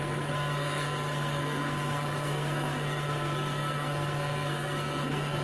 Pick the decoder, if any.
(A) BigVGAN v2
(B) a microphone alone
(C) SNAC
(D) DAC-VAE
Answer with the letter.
C